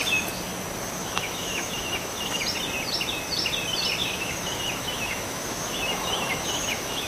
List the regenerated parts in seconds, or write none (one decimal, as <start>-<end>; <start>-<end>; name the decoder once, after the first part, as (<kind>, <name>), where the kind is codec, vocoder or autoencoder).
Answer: 1.0-2.4 (autoencoder, DAC-VAE); 4.0-7.1